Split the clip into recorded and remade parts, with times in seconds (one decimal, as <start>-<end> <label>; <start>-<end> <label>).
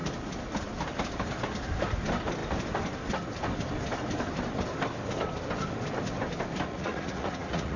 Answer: 0.0-6.7 recorded; 6.7-7.8 remade